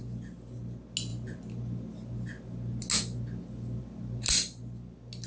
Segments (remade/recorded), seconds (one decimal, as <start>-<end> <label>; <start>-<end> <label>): 0.0-5.3 recorded